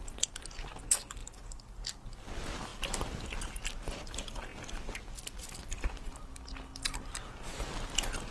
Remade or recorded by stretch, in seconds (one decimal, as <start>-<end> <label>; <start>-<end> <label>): 0.0-8.3 recorded